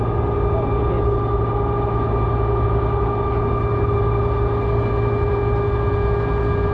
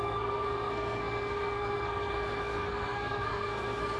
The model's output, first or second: second